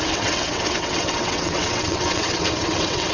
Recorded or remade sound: remade